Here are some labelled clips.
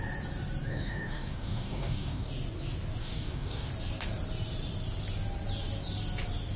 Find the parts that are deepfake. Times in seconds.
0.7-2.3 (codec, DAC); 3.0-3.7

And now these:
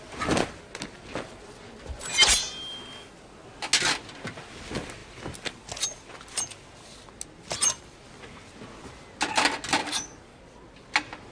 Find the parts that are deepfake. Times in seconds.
9.8-10.4 (codec, DAC)

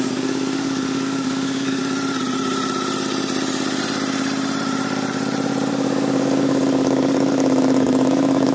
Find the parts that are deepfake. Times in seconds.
0.0-1.8 (codec, DAC); 5.7-8.5

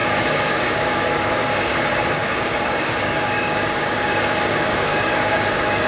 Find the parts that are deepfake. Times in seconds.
0.0-5.9 (codec, DAC)

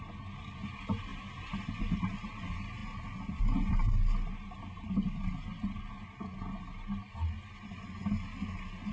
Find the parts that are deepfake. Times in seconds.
none

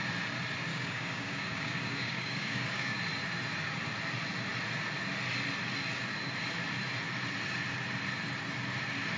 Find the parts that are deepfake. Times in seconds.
0.7-3.0 (codec, DAC)